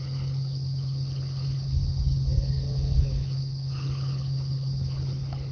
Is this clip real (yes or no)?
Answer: no